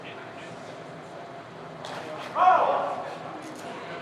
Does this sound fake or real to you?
fake